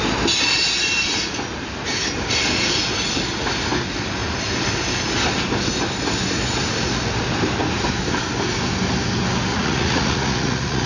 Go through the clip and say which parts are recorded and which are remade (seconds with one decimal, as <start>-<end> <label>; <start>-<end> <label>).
0.0-9.5 recorded; 9.5-10.9 remade